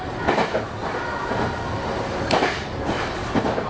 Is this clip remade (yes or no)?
no